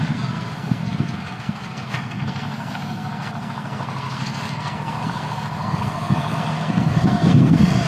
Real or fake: fake